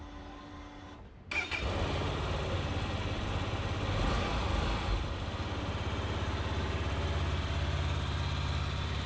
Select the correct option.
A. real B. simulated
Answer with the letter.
A